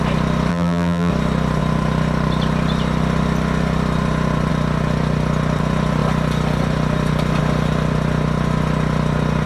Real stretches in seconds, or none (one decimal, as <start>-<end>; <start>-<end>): 0.0-0.5; 1.1-9.5